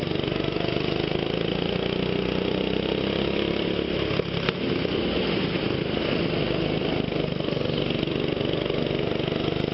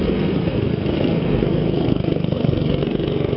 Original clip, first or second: first